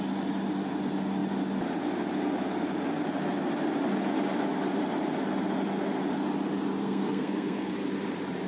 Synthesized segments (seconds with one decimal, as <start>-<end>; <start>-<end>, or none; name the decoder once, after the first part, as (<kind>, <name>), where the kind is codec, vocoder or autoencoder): 6.8-7.7 (codec, SNAC)